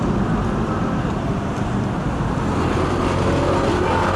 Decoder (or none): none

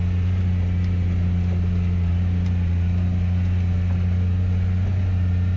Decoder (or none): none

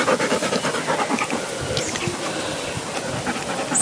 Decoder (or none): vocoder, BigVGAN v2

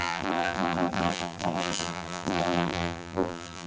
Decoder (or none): vocoder, BigVGAN v2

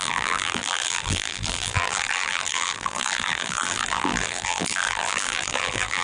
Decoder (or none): vocoder, BigVGAN v2